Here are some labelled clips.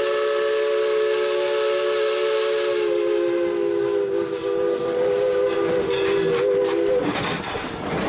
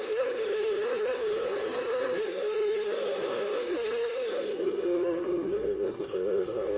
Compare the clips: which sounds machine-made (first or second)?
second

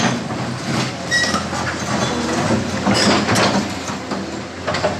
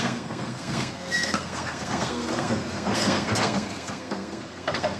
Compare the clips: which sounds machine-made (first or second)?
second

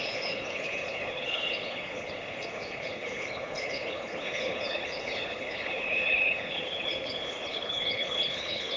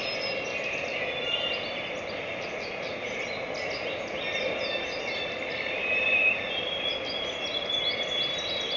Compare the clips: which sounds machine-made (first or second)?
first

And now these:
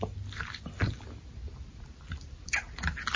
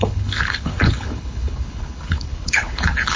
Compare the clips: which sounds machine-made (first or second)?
second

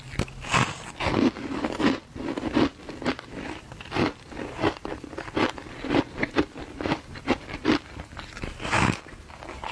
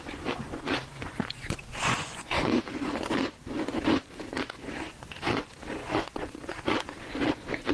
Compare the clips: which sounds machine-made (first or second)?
second